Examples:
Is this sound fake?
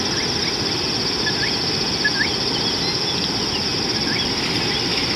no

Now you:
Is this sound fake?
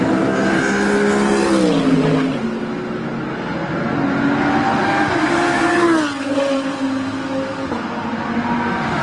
no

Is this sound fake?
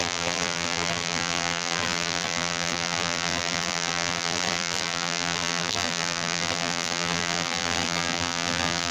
yes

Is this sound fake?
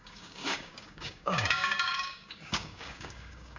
yes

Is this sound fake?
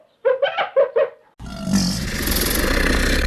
no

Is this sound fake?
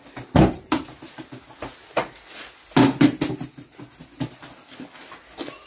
no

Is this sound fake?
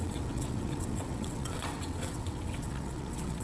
yes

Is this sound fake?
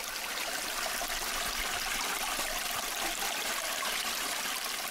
no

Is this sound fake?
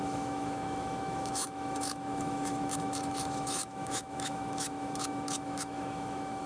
yes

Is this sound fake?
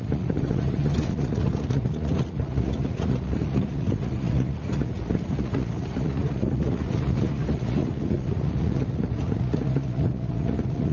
yes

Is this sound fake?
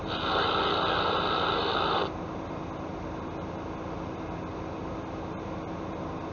no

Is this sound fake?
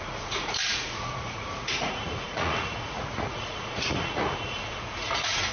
yes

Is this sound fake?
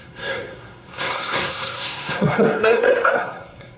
yes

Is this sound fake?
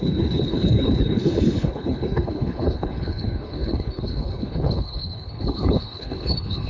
yes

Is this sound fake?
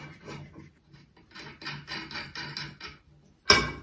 no